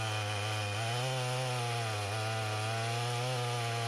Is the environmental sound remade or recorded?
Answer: recorded